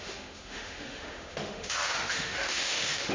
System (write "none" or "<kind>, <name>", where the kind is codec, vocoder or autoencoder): autoencoder, DAC-VAE